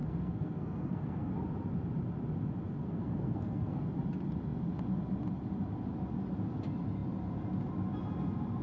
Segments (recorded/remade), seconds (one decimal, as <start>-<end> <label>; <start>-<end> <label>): 0.0-1.3 remade; 1.3-2.8 recorded; 2.8-3.8 remade; 3.8-8.6 recorded